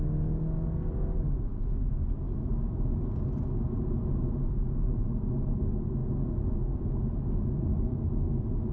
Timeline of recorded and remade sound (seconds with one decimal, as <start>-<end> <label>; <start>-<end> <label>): 0.0-8.7 recorded